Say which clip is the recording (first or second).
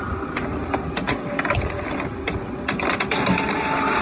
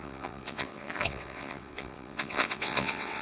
first